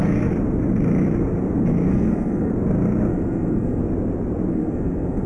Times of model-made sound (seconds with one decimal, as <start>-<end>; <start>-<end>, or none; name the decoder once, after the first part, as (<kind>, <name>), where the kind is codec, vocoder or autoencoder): 1.9-2.5 (codec, SNAC); 3.1-3.8; 4.5-5.3